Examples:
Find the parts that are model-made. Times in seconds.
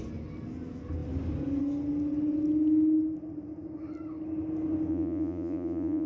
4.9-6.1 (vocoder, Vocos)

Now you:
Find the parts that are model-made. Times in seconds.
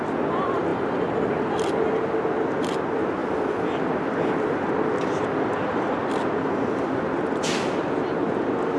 none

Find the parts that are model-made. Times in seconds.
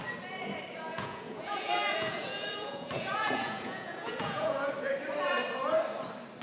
0.9-4.7 (vocoder, Vocos)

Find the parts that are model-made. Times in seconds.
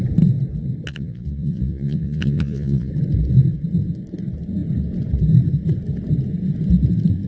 0.9-2.9 (vocoder, Vocos)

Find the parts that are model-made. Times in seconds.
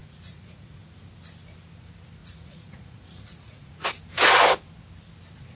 0.0-1.0 (vocoder, Vocos); 2.2-4.0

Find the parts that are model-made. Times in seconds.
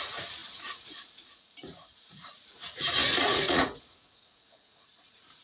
0.0-5.4 (vocoder, Vocos)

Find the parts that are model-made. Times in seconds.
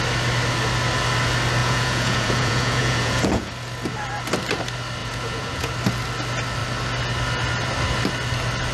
1.6-3.5 (vocoder, Vocos); 5.0-5.7